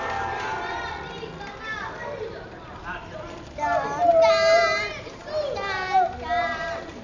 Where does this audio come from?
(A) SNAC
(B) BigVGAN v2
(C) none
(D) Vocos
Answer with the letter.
B